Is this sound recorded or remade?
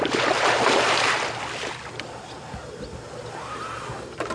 recorded